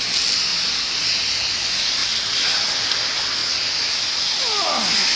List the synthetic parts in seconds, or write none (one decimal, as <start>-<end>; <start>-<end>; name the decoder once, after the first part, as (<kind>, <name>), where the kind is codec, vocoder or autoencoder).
0.5-1.0 (vocoder, BigVGAN v2)